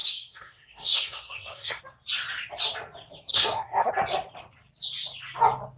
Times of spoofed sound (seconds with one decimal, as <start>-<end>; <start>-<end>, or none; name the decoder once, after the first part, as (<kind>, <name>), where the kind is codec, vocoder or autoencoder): 0.0-1.8 (codec, SNAC); 3.3-3.9